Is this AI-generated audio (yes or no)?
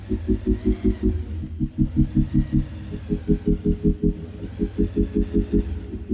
no